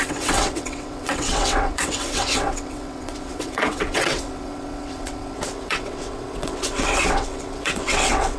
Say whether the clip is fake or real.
fake